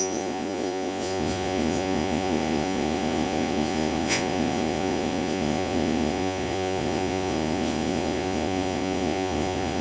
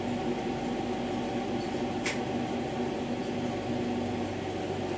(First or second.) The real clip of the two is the second